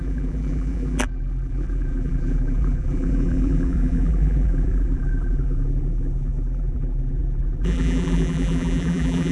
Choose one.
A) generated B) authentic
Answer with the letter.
A